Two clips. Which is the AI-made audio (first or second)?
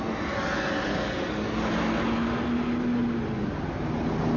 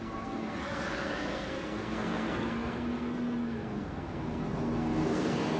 second